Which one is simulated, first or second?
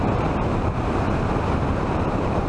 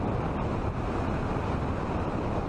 first